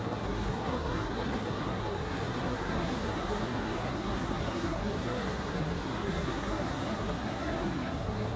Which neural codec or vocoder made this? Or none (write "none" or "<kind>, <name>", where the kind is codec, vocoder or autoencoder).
codec, SNAC